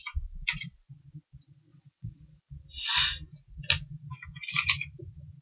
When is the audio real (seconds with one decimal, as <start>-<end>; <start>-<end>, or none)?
0.0-1.7; 2.4-5.4